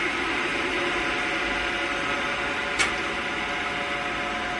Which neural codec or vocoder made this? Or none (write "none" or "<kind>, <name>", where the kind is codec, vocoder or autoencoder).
none